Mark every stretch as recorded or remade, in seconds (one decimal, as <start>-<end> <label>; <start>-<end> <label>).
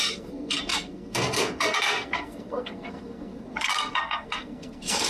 0.0-5.1 remade